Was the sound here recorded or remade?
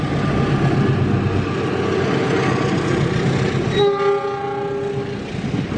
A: recorded